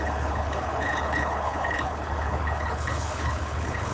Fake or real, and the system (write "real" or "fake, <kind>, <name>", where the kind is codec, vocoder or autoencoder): fake, codec, HILCodec